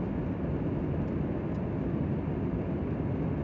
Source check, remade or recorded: recorded